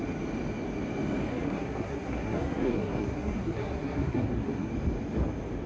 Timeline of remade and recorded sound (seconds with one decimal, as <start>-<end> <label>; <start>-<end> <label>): 0.0-1.3 recorded; 1.3-4.7 remade; 4.7-5.7 recorded